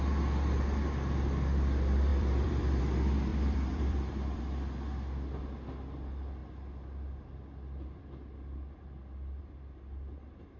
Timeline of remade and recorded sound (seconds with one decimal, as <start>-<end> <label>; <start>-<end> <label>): 0.0-2.1 recorded; 2.1-2.8 remade; 2.8-3.3 recorded; 3.3-4.4 remade; 4.4-10.6 recorded